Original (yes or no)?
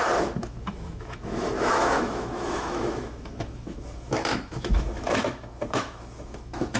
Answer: no